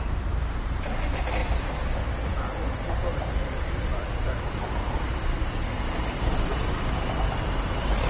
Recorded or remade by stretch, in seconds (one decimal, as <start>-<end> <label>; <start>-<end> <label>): 0.0-8.1 recorded